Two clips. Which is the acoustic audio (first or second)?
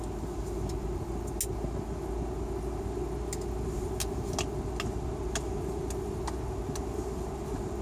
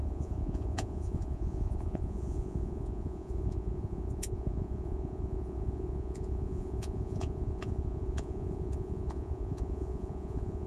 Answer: first